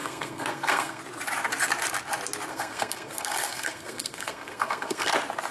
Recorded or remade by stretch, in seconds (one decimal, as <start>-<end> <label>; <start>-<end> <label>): 0.0-1.0 remade; 1.0-2.5 recorded; 2.5-5.1 remade; 5.1-5.5 recorded